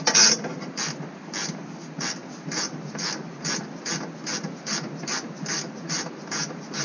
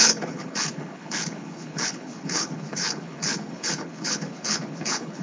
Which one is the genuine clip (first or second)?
first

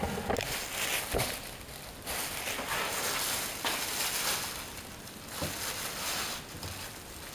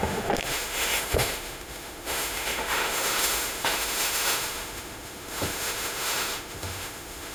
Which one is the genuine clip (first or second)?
first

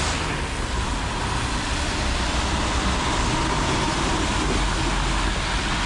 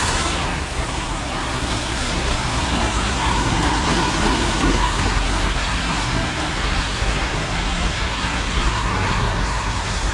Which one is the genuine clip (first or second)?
first